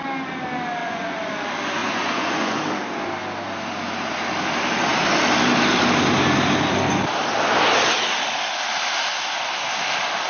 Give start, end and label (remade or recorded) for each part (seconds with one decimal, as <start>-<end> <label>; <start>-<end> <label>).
0.0-0.8 recorded; 0.8-1.3 remade; 1.3-1.8 recorded; 1.8-2.6 remade; 2.6-10.3 recorded

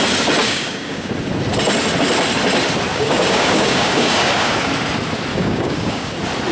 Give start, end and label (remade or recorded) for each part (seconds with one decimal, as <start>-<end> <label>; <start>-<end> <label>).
0.0-0.4 recorded; 0.4-1.1 remade; 1.1-2.9 recorded; 2.9-4.6 remade; 4.6-5.3 recorded; 5.3-6.1 remade; 6.1-6.5 recorded

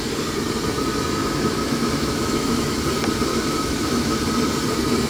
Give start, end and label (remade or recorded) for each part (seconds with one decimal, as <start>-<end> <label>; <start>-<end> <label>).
0.0-1.2 recorded; 1.2-2.8 remade; 2.8-3.3 recorded; 3.3-4.2 remade; 4.2-5.1 recorded